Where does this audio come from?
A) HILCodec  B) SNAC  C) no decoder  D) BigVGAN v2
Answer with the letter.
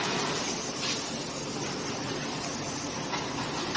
C